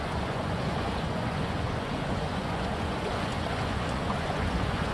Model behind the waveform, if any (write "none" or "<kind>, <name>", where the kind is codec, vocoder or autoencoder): vocoder, Vocos